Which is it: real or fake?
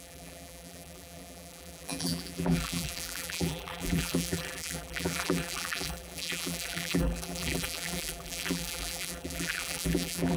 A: fake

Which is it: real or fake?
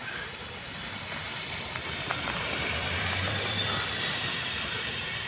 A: fake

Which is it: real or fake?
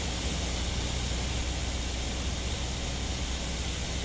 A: real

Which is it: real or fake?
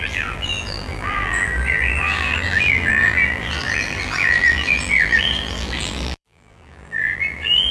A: fake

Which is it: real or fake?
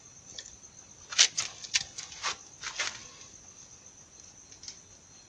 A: real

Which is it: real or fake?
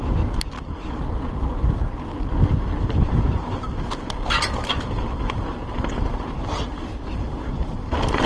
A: real